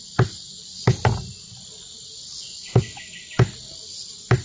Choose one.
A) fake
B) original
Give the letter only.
B